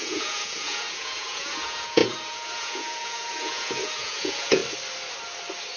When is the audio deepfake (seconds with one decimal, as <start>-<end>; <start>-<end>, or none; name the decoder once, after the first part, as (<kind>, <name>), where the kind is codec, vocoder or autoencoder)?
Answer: 0.0-4.6 (vocoder, Vocos)